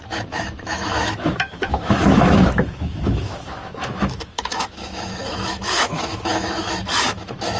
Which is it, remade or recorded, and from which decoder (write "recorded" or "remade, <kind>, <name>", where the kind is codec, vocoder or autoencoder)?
remade, autoencoder, DAC-VAE